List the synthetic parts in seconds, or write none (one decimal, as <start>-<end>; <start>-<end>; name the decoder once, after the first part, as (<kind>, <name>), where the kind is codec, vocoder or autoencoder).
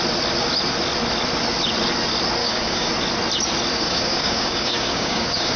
2.4-2.9 (codec, DAC); 3.7-5.6